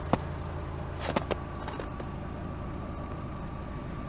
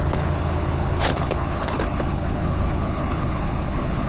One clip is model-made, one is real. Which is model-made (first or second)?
second